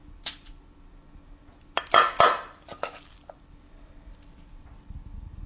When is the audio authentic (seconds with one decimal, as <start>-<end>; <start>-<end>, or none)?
0.0-5.5